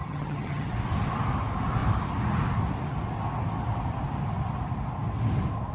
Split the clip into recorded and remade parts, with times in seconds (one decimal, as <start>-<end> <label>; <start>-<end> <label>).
0.0-0.7 remade; 0.7-5.7 recorded